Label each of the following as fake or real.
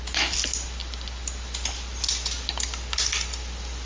real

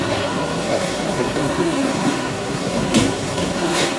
fake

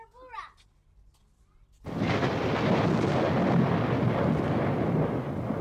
real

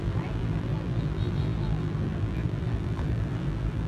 fake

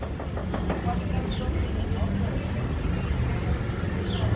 real